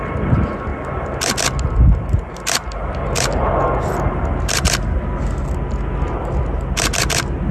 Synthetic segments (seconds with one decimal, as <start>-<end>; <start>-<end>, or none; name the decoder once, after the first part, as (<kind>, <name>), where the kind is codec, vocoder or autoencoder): none